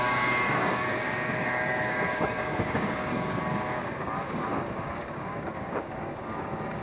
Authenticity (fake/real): fake